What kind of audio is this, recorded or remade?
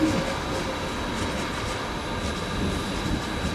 recorded